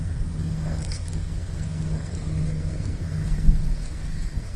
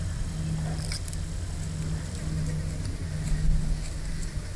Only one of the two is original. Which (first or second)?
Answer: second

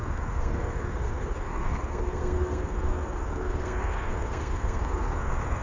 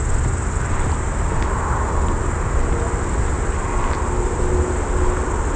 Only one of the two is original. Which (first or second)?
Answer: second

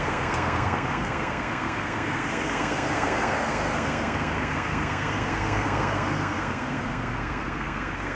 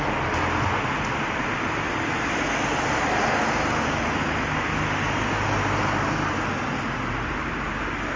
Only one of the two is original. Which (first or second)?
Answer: second